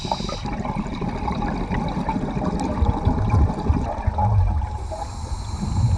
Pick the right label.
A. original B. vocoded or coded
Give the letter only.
A